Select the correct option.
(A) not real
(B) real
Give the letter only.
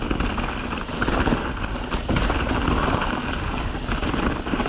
B